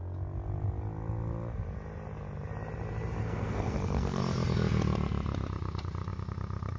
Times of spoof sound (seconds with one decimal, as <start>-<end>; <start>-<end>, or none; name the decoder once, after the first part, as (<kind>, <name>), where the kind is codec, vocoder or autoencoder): 3.2-4.2 (codec, SNAC)